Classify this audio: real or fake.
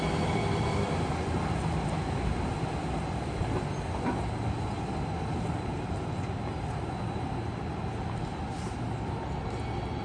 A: real